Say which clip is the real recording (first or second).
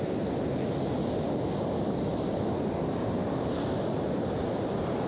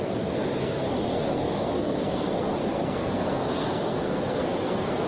first